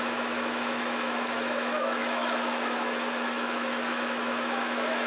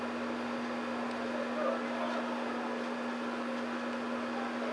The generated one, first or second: first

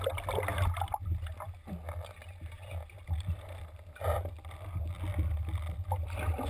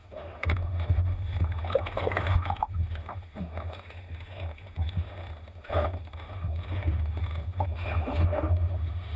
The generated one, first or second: second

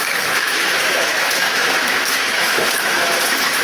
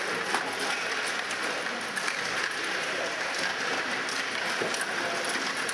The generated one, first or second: first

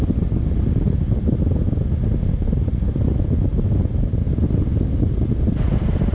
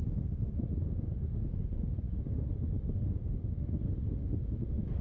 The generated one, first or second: second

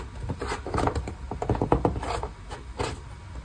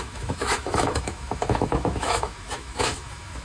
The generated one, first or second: second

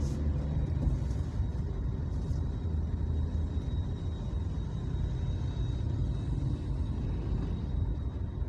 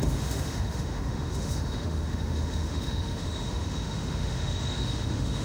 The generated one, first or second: second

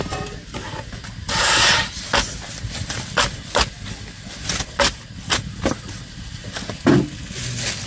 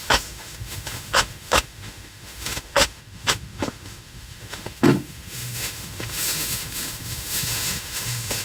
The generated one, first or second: second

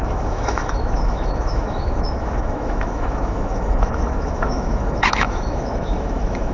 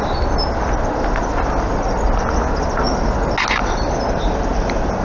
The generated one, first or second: first